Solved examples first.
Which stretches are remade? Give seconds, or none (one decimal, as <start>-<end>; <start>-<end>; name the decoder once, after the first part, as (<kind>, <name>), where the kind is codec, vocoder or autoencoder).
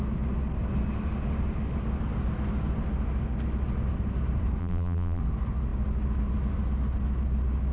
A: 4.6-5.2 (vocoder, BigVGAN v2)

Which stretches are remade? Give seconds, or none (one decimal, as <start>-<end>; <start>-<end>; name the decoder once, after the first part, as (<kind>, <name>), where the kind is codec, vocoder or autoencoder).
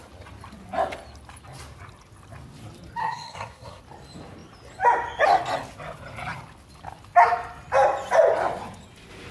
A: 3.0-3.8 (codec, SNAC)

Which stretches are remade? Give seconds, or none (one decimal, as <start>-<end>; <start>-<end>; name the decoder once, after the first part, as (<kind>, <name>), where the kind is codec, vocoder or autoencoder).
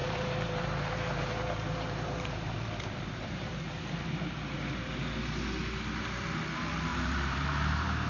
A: 0.0-4.9 (vocoder, BigVGAN v2); 6.9-8.1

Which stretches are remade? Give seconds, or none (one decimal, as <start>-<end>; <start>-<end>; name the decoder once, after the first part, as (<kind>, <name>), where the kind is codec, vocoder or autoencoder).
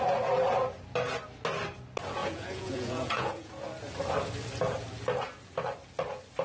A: 2.2-3.5 (vocoder, Vocos)